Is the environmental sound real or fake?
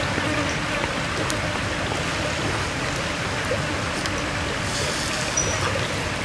real